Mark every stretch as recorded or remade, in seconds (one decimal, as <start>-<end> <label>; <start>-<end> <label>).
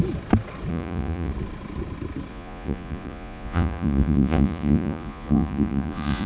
0.0-0.7 recorded; 0.7-1.3 remade; 1.3-2.3 recorded; 2.3-6.3 remade